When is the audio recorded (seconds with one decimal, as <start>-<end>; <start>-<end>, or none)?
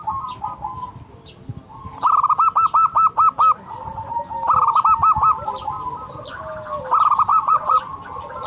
0.0-7.3; 7.8-8.5